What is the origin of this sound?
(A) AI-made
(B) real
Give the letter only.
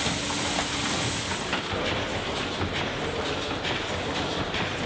B